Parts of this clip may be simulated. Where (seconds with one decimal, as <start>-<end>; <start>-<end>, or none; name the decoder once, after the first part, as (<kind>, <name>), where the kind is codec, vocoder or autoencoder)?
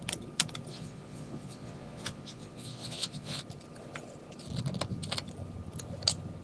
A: 0.7-3.4 (vocoder, Vocos)